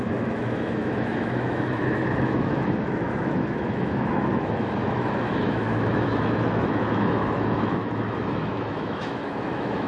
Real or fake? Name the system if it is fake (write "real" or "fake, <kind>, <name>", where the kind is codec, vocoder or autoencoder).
fake, autoencoder, DAC-VAE